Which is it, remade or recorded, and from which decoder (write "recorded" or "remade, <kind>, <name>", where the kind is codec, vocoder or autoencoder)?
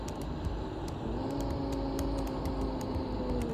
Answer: recorded